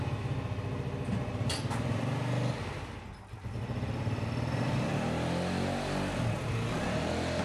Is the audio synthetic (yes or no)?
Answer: no